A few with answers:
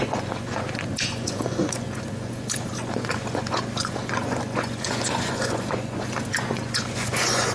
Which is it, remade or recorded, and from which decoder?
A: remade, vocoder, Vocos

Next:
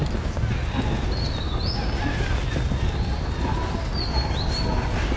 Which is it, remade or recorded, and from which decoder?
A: recorded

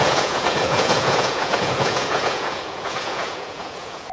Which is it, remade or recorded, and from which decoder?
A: remade, vocoder, Vocos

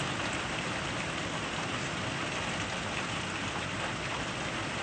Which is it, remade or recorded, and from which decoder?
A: recorded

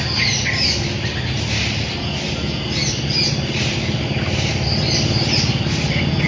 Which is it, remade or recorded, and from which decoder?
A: recorded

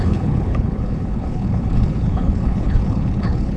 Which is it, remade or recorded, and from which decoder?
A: remade, codec, HILCodec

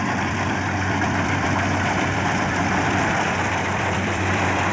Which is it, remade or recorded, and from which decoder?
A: remade, vocoder, BigVGAN v2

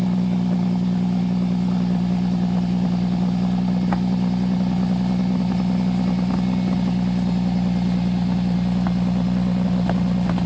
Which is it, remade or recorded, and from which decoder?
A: recorded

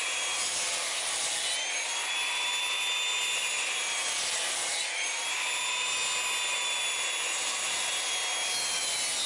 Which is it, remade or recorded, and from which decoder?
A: recorded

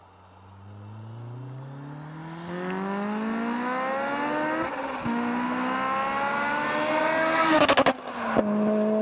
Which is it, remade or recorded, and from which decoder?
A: recorded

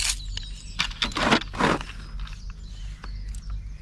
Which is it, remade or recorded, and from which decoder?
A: recorded